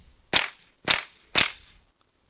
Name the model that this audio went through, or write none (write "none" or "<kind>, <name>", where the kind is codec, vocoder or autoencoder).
none